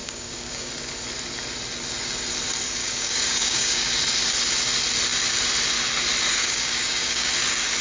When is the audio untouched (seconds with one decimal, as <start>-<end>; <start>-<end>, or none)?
0.7-2.8; 3.9-6.4; 7.3-7.8